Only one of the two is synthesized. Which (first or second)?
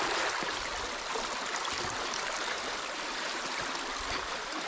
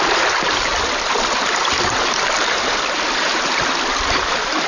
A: second